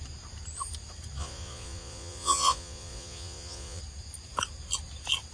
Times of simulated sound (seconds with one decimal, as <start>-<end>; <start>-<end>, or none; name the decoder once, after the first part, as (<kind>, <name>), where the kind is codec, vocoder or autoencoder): 1.2-3.8 (vocoder, Vocos)